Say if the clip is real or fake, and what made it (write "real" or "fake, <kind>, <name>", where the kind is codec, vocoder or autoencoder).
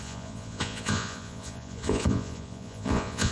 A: fake, vocoder, Vocos